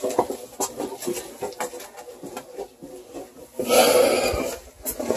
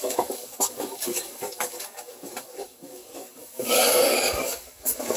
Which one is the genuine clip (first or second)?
first